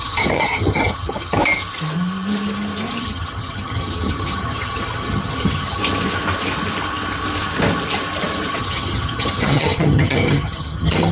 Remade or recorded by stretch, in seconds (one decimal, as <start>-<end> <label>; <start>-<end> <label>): 0.0-1.4 remade; 1.4-3.0 recorded; 3.0-5.8 remade; 5.8-8.6 recorded; 8.6-11.1 remade